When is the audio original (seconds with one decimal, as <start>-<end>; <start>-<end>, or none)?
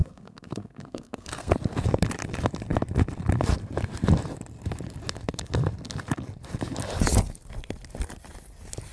1.5-8.9